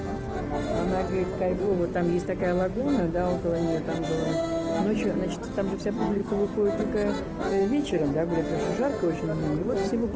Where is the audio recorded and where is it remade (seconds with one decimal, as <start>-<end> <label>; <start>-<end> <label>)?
0.0-6.2 recorded; 6.2-6.8 remade; 6.8-7.6 recorded; 7.6-8.1 remade; 8.1-10.2 recorded